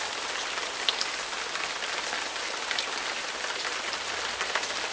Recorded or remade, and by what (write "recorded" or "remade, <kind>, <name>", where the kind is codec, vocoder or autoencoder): recorded